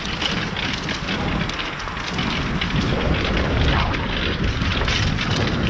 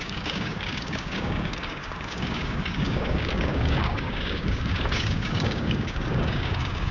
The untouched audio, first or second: first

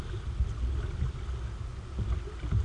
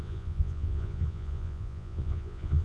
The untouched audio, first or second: first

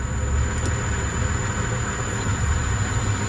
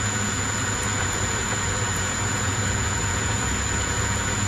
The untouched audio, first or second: first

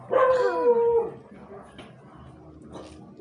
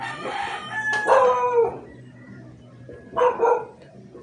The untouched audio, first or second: first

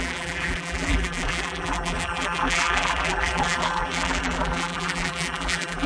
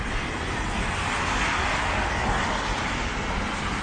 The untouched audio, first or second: second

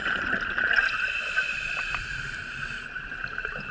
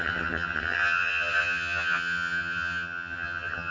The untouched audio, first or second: first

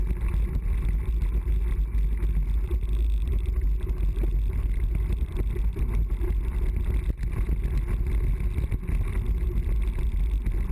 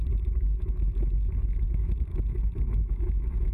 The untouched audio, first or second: first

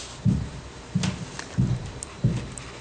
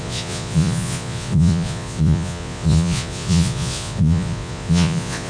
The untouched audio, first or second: first